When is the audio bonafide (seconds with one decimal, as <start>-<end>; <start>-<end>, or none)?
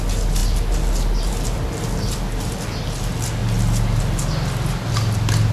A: 0.0-5.5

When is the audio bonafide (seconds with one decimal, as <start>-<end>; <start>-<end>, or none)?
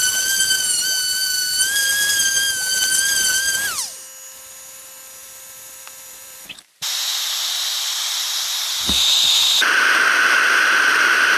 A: 0.0-5.2; 8.2-11.4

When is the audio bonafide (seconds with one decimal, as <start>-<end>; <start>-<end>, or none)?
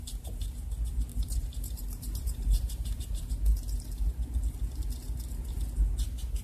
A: 0.0-1.1; 3.3-6.4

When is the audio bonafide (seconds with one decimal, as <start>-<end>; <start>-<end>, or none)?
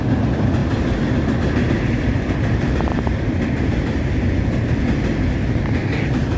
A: 0.0-2.9; 3.7-5.8